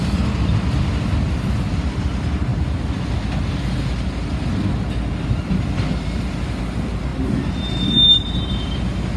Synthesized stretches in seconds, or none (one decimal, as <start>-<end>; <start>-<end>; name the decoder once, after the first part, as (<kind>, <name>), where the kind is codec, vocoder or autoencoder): none